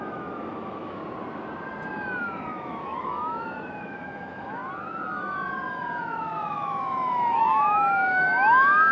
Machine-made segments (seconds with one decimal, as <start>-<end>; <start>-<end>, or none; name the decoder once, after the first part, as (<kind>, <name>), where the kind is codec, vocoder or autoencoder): 0.0-1.0 (autoencoder, DAC-VAE); 2.2-4.6; 5.7-8.9